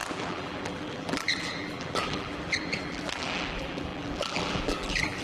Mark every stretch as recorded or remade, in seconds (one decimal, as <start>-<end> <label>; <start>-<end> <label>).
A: 0.0-5.2 remade